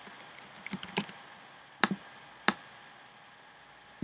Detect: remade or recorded recorded